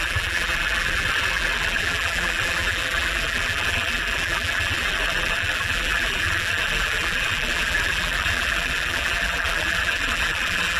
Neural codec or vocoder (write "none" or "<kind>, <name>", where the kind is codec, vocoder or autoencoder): vocoder, BigVGAN v2